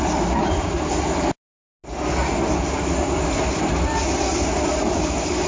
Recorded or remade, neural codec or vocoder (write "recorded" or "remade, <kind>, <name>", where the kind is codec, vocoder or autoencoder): recorded